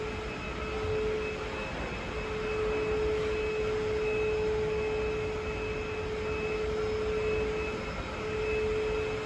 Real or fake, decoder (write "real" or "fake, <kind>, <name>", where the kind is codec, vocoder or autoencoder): real